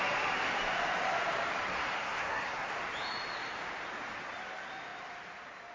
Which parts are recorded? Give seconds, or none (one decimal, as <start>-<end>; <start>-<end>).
0.0-1.7; 2.7-5.7